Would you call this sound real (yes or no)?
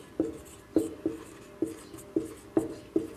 yes